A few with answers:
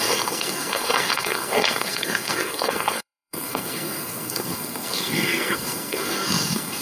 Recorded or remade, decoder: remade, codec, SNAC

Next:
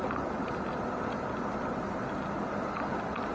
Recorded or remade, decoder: recorded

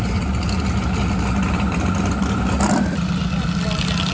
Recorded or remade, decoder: recorded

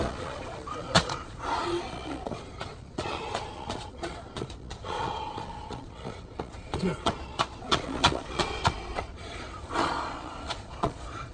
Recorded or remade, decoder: remade, vocoder, Vocos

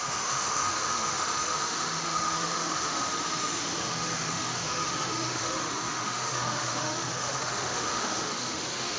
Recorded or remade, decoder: remade, autoencoder, DAC-VAE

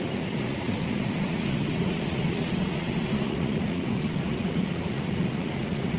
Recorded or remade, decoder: remade, vocoder, Vocos